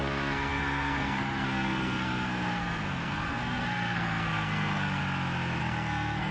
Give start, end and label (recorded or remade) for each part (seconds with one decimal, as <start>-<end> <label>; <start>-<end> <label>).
0.0-5.0 remade; 5.0-5.6 recorded; 5.6-6.3 remade